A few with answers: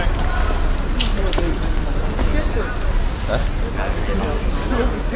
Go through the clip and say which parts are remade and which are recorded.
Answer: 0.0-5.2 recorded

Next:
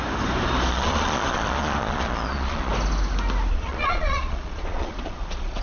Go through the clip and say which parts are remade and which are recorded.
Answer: 0.0-0.7 recorded; 0.7-2.7 remade; 2.7-3.5 recorded; 3.5-5.6 remade

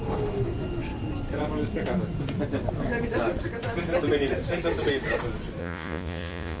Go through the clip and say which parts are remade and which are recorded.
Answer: 0.0-5.6 recorded; 5.6-6.6 remade